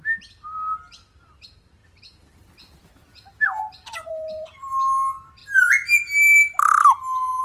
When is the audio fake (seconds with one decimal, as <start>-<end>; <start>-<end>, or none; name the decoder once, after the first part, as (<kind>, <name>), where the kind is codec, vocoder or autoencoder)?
none